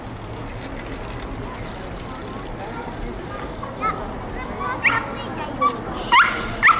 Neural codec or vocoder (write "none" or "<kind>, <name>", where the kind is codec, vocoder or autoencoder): none